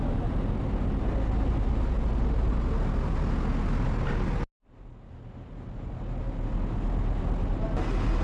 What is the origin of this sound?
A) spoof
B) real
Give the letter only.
B